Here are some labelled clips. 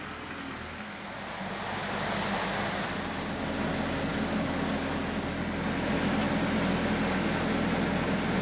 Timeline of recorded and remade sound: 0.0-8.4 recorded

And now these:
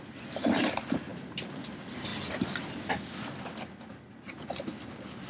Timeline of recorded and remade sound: 0.0-5.3 recorded

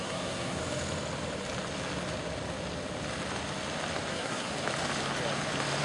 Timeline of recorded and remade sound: 0.0-0.6 remade; 0.6-4.1 recorded; 4.1-4.5 remade; 4.5-5.8 recorded